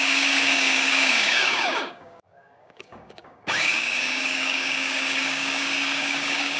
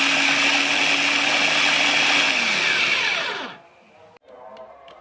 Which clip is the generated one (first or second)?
first